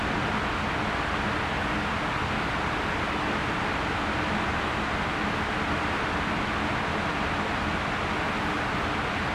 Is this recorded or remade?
recorded